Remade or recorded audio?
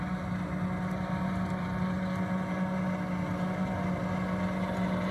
recorded